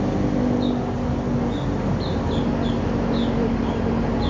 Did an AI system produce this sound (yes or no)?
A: no